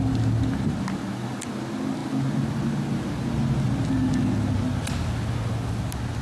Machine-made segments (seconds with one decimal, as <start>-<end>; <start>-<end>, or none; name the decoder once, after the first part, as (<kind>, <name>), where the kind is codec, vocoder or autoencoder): none